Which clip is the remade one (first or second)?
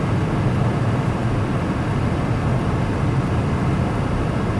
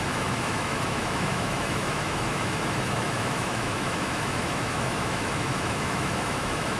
second